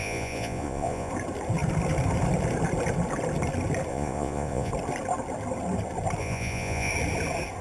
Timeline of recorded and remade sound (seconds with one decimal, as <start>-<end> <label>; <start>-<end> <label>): 0.0-1.1 remade; 1.1-3.9 recorded; 3.9-4.7 remade; 4.7-6.2 recorded; 6.2-6.9 remade; 6.9-7.6 recorded